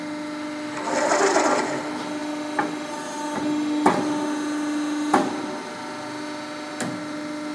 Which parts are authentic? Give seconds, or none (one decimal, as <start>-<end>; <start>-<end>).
0.0-7.5